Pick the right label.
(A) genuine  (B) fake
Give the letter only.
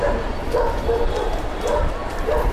A